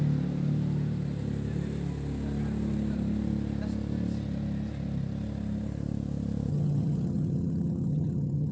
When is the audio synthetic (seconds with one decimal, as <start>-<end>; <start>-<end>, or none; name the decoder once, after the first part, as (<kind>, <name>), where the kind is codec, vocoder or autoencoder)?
6.5-8.5 (vocoder, HiFi-GAN)